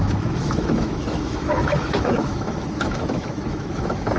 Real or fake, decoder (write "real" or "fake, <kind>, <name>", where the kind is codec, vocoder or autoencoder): fake, autoencoder, DAC-VAE